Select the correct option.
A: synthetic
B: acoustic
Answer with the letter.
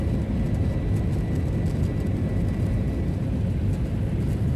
B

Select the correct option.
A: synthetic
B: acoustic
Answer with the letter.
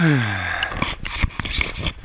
B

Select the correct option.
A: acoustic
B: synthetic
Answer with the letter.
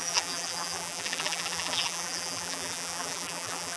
B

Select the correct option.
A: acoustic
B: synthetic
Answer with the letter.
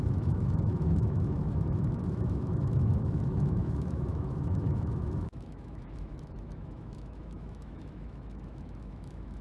B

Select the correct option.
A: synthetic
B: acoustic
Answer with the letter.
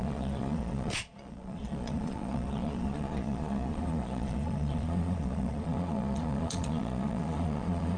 A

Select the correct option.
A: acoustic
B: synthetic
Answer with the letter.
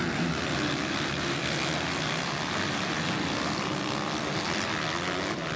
A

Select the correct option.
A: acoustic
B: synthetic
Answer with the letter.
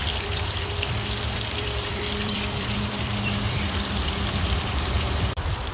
B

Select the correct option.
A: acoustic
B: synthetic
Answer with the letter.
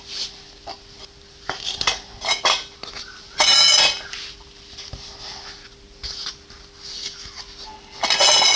A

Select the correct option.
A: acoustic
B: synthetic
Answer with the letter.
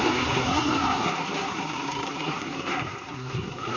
B